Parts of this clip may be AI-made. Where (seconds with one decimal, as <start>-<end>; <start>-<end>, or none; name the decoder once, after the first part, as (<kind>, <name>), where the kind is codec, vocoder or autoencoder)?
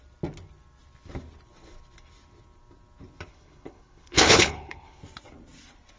3.3-5.0 (codec, HILCodec)